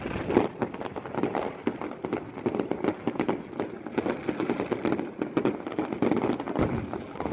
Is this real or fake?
real